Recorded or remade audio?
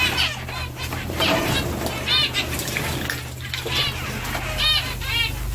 recorded